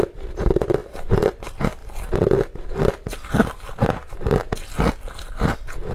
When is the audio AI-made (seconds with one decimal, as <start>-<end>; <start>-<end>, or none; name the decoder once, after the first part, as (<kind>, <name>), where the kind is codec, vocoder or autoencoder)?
none